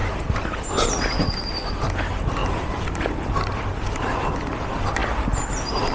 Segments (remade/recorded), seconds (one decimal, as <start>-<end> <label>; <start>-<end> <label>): 0.0-5.9 recorded